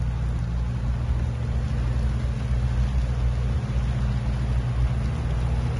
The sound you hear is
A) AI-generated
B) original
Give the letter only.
B